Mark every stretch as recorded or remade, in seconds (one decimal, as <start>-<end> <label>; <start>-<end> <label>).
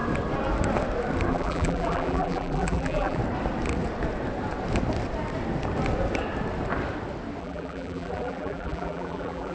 0.0-1.3 recorded; 1.3-3.2 remade; 3.2-7.4 recorded; 7.4-9.5 remade